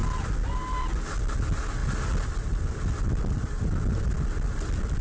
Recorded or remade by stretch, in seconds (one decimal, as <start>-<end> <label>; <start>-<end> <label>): 0.0-1.8 recorded; 1.8-5.0 remade